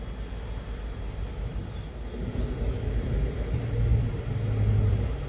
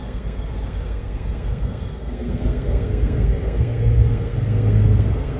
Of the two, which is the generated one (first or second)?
second